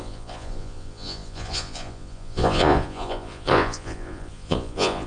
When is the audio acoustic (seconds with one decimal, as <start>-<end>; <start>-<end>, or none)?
none

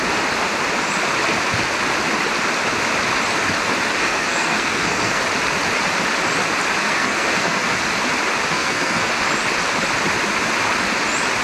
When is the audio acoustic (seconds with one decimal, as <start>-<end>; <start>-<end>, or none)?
0.0-4.0; 5.2-6.8; 7.8-8.5; 9.1-11.4

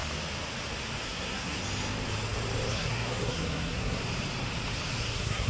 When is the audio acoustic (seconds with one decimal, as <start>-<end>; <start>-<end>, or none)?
0.0-1.0; 1.6-2.7; 4.0-5.0

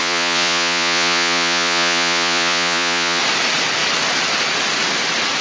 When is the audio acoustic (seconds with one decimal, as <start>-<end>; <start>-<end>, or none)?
3.2-5.4

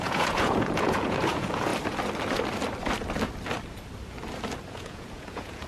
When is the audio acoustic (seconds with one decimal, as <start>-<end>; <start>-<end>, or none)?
1.7-4.7

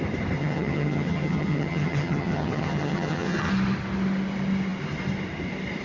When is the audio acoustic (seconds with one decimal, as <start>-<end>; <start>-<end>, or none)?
0.0-0.4; 3.5-5.8

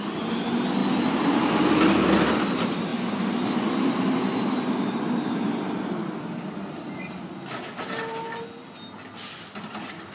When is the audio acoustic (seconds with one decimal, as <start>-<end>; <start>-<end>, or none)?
0.0-10.1